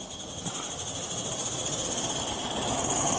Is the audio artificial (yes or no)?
no